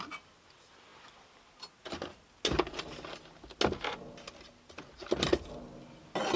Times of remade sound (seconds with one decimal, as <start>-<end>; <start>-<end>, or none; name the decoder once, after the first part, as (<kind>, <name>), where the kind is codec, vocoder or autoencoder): none